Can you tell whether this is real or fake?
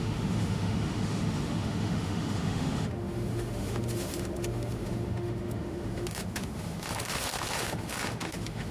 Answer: fake